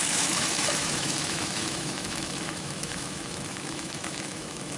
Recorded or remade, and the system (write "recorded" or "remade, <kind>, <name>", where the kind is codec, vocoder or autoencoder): remade, autoencoder, DAC-VAE